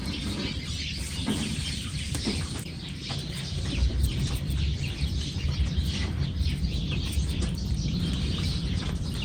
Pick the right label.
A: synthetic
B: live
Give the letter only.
A